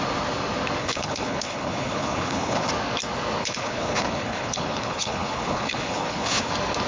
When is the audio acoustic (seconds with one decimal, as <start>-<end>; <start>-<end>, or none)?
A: 0.0-0.8; 2.7-3.4; 6.5-6.9